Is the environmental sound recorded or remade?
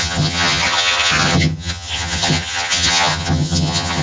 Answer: remade